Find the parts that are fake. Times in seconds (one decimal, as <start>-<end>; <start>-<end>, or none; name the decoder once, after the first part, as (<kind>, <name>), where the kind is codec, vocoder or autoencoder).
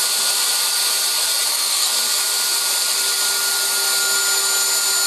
1.5-1.9 (codec, SNAC)